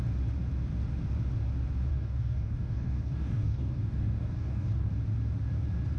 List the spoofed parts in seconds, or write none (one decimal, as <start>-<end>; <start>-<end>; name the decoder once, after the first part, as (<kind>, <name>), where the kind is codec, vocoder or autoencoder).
1.9-4.9 (codec, DAC)